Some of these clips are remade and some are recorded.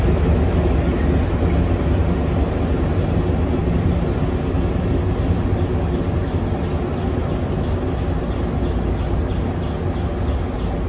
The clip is recorded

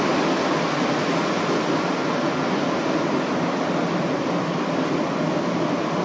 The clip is recorded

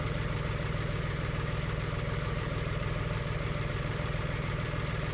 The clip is remade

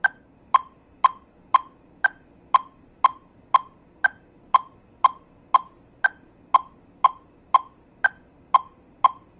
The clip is recorded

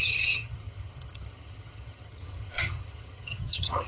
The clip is remade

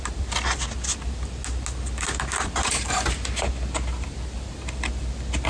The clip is recorded